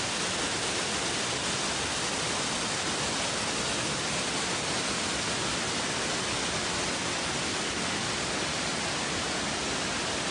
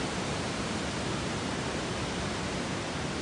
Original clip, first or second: first